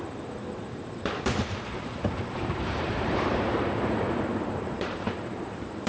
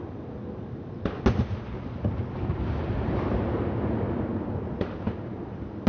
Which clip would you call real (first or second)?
second